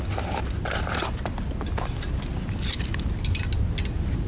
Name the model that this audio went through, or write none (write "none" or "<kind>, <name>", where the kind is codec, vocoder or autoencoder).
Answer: none